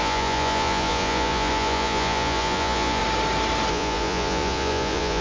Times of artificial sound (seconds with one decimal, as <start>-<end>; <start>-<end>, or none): 0.0-3.0; 3.7-5.2